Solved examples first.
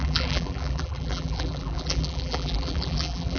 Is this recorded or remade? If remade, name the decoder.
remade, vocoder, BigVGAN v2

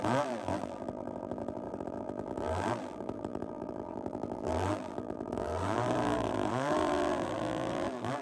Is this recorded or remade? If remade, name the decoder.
remade, vocoder, BigVGAN v2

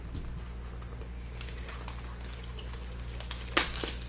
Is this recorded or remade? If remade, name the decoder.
recorded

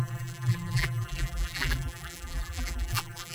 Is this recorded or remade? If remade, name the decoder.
remade, vocoder, BigVGAN v2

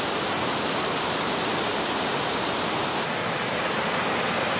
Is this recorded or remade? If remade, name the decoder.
recorded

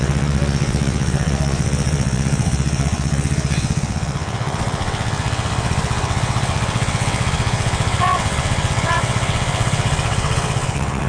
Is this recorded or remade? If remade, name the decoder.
remade, vocoder, WaveNeXt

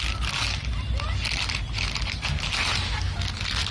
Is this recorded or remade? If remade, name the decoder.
recorded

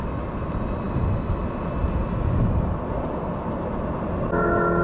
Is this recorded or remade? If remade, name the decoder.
recorded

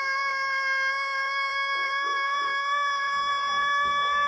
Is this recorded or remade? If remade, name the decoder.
recorded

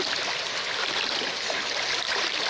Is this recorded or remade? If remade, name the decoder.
recorded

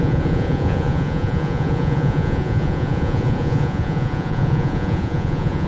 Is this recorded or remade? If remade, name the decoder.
remade, vocoder, Vocos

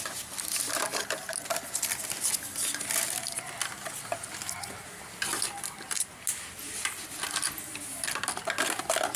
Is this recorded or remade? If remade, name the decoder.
recorded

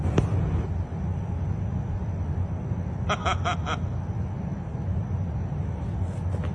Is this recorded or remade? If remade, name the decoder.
recorded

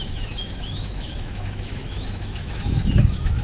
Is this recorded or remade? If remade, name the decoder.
remade, autoencoder, DAC-VAE